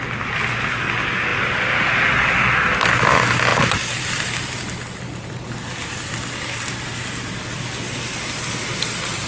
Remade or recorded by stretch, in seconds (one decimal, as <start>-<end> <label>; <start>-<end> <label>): 0.0-9.3 recorded

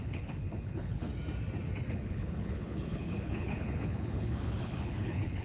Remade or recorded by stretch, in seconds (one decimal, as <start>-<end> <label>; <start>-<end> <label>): 0.0-1.1 remade; 1.1-1.9 recorded; 1.9-5.4 remade

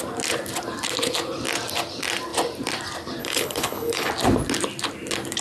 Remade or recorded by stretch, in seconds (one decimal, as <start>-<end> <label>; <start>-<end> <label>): 0.0-3.2 recorded; 3.2-4.1 remade; 4.1-5.4 recorded

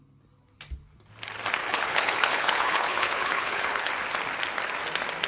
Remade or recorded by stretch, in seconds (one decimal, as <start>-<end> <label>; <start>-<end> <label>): 0.0-1.6 recorded; 1.6-3.9 remade; 3.9-5.3 recorded

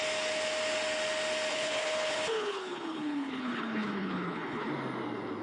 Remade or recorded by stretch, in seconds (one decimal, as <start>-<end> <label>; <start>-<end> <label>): 0.0-1.5 recorded; 1.5-4.7 remade; 4.7-5.4 recorded

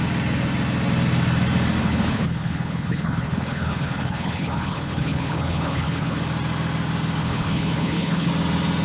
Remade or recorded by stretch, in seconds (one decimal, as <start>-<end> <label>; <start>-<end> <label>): 0.0-1.8 recorded; 1.8-6.2 remade; 6.2-7.2 recorded; 7.2-8.3 remade; 8.3-8.8 recorded